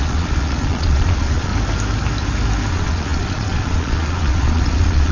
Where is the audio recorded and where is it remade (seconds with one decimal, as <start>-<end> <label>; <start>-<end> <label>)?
0.0-1.5 remade; 1.5-2.7 recorded; 2.7-5.1 remade

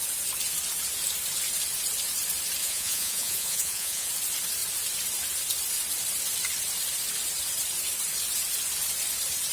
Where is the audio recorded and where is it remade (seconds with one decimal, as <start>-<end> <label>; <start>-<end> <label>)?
0.0-2.6 recorded; 2.6-4.1 remade; 4.1-9.5 recorded

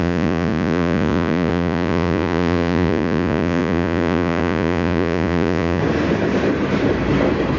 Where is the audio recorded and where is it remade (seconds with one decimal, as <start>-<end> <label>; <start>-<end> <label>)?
0.0-5.8 remade; 5.8-7.6 recorded

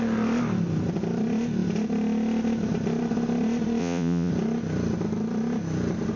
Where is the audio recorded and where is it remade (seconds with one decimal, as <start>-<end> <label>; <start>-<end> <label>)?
0.0-3.8 recorded; 3.8-4.3 remade; 4.3-6.2 recorded

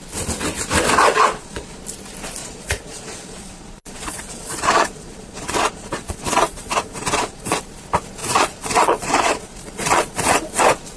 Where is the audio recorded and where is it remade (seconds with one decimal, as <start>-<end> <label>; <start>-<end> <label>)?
0.0-1.1 recorded; 1.1-1.8 remade; 1.8-2.4 recorded; 2.4-7.6 remade; 7.6-8.2 recorded; 8.2-10.6 remade; 10.6-11.0 recorded

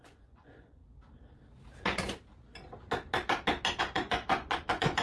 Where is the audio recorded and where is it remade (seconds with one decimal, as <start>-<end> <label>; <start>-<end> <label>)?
0.0-0.8 remade; 0.8-3.8 recorded; 3.8-5.0 remade

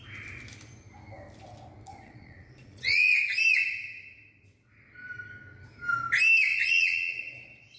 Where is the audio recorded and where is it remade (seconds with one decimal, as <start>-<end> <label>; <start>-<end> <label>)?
0.0-1.9 recorded; 1.9-3.2 remade; 3.2-6.5 recorded; 6.5-7.8 remade

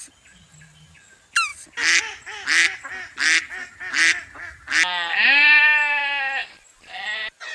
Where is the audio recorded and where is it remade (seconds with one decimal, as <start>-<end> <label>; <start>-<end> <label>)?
0.0-7.5 recorded